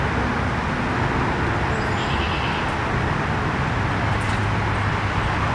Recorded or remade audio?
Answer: recorded